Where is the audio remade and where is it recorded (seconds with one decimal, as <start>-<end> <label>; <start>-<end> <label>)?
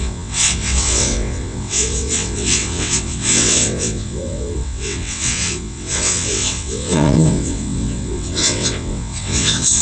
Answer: 0.0-9.8 remade